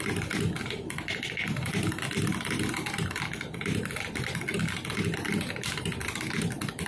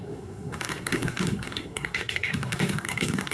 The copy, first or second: second